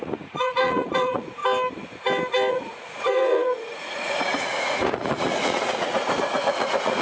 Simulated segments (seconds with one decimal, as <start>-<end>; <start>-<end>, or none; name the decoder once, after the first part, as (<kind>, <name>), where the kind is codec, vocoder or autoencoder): 0.0-1.4 (vocoder, Vocos); 2.5-7.0